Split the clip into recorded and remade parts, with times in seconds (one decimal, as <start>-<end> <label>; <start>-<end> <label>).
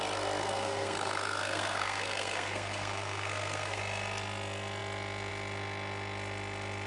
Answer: 0.0-0.4 recorded; 0.4-3.8 remade; 3.8-6.9 recorded